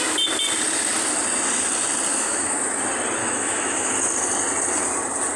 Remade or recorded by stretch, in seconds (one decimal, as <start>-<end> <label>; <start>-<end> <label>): 0.0-2.1 recorded; 2.1-2.6 remade; 2.6-3.2 recorded; 3.2-3.9 remade; 3.9-5.4 recorded